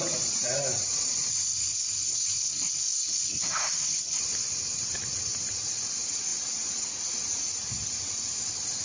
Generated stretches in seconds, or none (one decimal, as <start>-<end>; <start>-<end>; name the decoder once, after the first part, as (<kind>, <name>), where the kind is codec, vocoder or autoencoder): 1.3-4.2 (codec, SNAC)